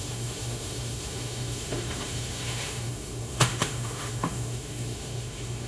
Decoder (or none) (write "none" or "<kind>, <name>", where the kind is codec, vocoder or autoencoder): autoencoder, DAC-VAE